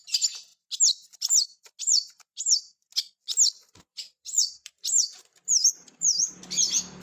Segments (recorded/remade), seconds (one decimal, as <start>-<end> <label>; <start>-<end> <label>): 0.0-3.9 recorded; 3.9-6.4 remade; 6.4-7.0 recorded